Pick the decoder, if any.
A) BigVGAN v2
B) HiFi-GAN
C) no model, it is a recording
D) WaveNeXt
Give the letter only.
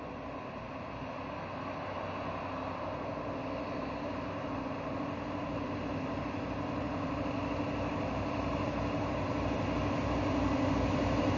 C